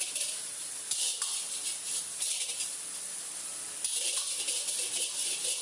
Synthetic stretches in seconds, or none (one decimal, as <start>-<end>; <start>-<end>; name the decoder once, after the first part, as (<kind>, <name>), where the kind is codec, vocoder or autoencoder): none